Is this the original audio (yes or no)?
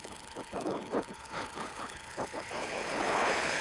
no